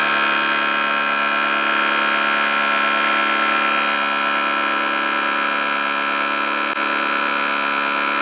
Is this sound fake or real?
real